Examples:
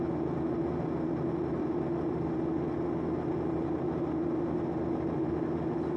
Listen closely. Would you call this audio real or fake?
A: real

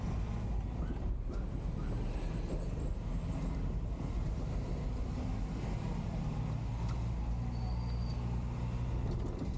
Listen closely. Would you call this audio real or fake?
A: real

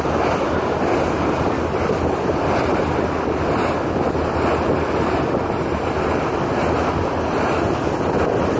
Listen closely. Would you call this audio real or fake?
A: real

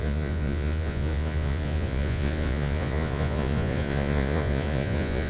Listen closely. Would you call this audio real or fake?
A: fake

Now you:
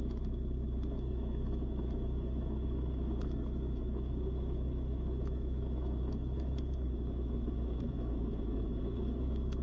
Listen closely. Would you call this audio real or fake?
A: fake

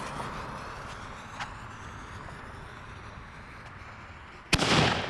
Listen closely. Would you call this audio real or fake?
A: real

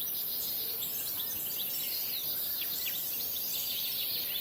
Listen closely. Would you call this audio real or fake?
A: real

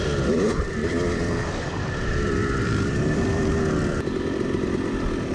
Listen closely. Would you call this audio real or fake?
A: fake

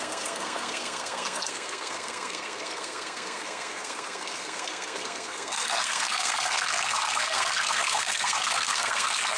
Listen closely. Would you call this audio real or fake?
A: fake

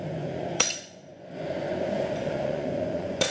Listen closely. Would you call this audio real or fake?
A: fake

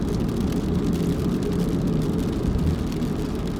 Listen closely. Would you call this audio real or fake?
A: real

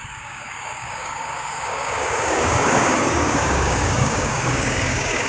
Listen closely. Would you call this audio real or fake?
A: fake